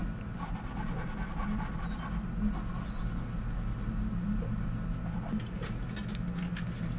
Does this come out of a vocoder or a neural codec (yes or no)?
no